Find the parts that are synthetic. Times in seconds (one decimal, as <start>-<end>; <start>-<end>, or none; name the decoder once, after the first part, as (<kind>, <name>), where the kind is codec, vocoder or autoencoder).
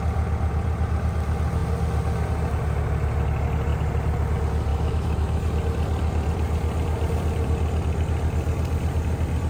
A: 4.7-5.5 (autoencoder, DAC-VAE)